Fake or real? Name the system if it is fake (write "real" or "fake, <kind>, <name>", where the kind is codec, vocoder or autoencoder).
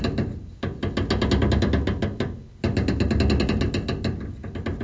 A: real